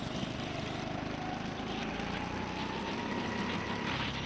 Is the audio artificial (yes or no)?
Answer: no